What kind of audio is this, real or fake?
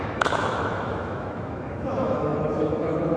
fake